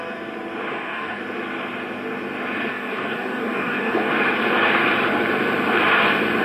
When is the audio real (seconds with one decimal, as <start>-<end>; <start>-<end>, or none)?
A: 0.0-0.7; 1.2-2.7; 4.1-6.4